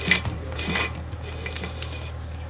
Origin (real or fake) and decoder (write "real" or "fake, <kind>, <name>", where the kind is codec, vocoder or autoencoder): real